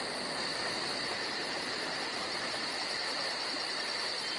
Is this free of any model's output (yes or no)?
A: yes